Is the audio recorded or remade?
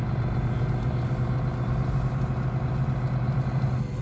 recorded